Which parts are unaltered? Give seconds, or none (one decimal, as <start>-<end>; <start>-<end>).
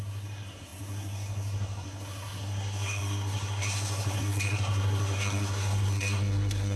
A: none